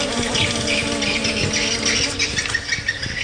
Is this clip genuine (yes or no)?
yes